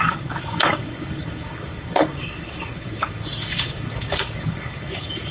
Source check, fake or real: fake